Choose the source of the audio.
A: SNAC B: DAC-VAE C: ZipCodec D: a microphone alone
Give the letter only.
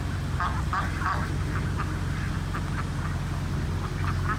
D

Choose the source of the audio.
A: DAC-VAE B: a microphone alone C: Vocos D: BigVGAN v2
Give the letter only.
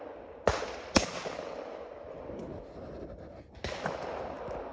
B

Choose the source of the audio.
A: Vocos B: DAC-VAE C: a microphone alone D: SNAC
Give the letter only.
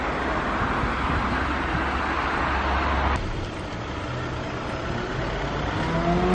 C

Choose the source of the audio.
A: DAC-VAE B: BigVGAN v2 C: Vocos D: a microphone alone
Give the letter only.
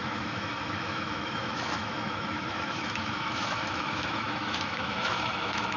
A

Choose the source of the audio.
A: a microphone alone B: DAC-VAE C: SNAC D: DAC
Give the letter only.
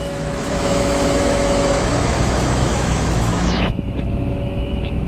B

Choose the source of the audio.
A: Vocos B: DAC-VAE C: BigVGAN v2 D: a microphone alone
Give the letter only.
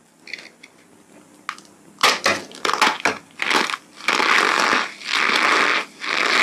D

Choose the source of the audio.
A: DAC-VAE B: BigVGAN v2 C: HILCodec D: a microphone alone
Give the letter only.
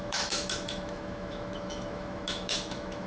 A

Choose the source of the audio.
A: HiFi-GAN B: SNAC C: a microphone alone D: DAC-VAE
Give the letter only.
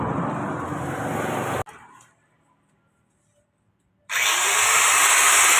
C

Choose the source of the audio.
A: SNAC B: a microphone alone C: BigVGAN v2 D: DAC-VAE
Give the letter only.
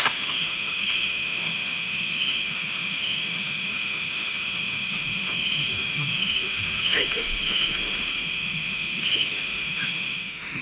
D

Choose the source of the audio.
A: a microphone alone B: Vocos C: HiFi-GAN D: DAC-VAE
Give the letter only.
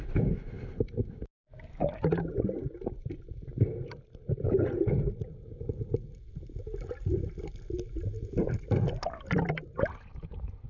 A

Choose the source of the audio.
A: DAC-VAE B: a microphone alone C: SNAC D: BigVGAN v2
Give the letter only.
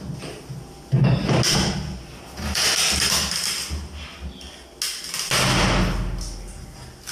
B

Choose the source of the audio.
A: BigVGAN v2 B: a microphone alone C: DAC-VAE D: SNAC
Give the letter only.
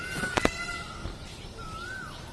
B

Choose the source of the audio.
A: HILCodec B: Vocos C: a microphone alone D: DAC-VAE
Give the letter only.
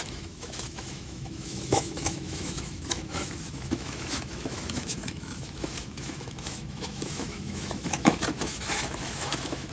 D